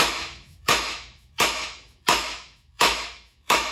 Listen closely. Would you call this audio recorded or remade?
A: remade